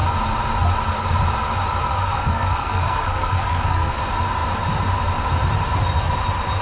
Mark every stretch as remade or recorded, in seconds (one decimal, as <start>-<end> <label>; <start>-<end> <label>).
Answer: 0.0-1.9 recorded; 1.9-4.0 remade; 4.0-6.6 recorded

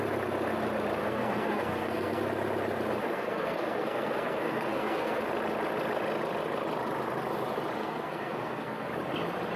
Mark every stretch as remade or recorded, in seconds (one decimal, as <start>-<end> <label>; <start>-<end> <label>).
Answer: 0.0-1.0 recorded; 1.0-2.2 remade; 2.2-3.0 recorded; 3.0-5.2 remade; 5.2-7.8 recorded; 7.8-8.9 remade; 8.9-9.6 recorded